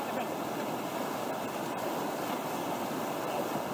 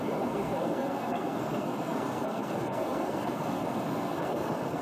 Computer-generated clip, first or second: second